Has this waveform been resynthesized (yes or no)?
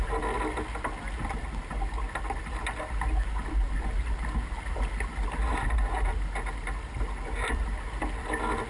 no